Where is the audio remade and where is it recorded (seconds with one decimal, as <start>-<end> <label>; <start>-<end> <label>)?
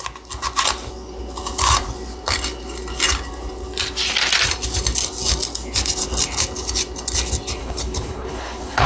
0.0-7.6 recorded; 7.6-8.9 remade